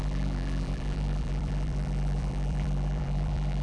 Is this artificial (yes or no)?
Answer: yes